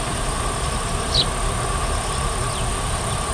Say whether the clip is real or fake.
real